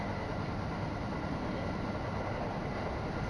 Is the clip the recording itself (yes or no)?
yes